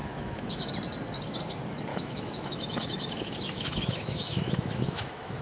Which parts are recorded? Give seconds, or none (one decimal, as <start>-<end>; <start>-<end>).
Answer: 0.7-1.9